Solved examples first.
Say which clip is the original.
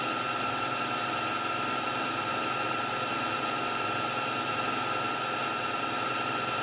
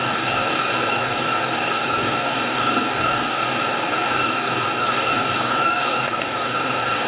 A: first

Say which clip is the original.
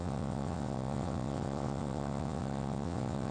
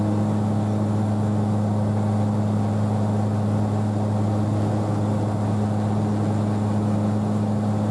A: second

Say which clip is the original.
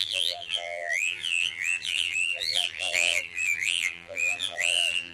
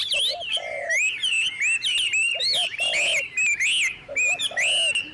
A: second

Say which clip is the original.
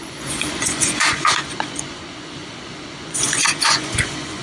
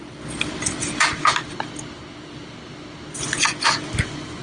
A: second